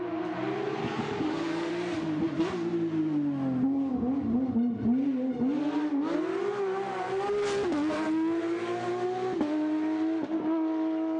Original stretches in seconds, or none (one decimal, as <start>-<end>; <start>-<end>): 0.0-0.8; 1.7-11.2